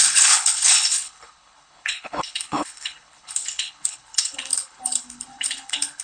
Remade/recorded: remade